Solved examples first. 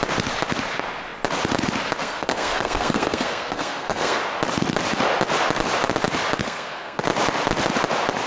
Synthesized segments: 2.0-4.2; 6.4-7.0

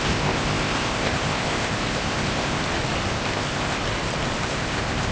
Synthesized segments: 0.0-2.6; 3.1-3.8; 4.4-5.1

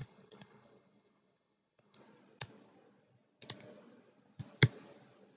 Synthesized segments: 0.0-2.0

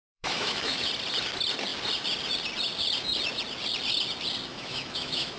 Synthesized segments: 0.0-0.9; 4.5-5.4

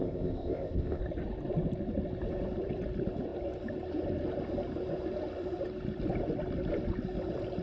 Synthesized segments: 0.0-1.0

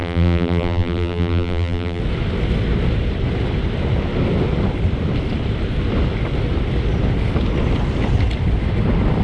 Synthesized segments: 0.0-2.0

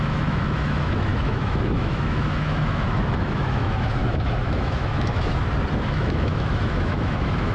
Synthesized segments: 0.0-5.3; 5.8-7.5

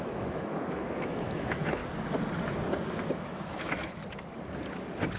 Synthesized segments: 0.0-1.8; 3.1-4.0